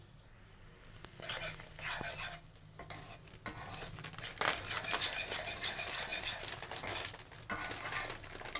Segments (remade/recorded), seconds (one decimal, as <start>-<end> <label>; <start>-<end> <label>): 0.0-8.6 recorded